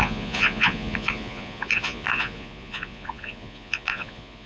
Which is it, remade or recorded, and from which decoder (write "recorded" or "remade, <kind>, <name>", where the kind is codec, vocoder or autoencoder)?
remade, vocoder, Vocos